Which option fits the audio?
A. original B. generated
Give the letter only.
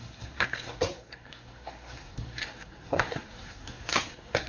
B